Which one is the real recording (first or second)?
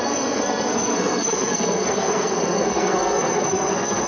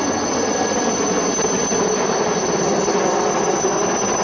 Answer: second